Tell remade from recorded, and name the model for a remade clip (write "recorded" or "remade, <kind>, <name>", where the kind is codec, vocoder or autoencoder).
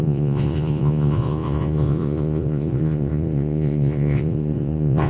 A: remade, vocoder, Vocos